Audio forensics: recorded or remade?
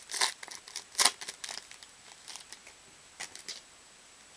recorded